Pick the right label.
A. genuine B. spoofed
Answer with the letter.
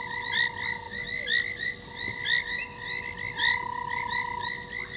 A